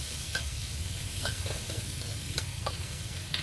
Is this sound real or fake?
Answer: fake